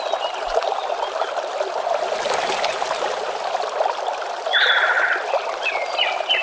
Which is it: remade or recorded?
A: recorded